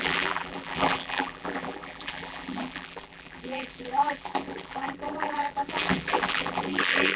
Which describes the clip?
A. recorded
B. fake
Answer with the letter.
B